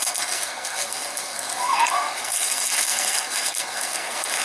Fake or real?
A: fake